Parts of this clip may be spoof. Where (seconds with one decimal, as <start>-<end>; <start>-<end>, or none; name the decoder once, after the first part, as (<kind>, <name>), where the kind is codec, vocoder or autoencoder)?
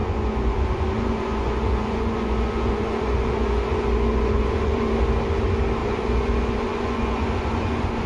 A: 0.0-4.9 (vocoder, Vocos); 5.8-8.1